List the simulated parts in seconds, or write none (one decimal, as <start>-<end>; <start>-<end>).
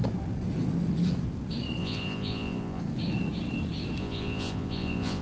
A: 1.8-2.8; 4.0-5.2